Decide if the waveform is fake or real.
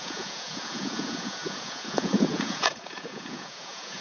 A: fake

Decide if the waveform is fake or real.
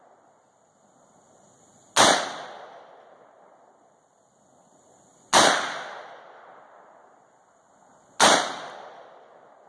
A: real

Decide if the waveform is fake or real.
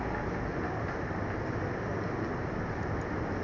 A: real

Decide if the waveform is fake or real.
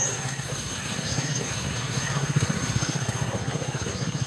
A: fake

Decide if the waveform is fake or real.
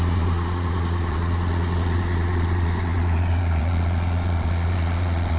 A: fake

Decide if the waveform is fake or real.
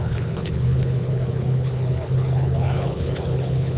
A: fake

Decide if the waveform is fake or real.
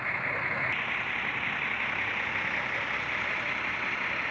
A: real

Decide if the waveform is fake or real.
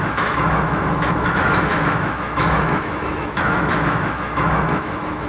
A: fake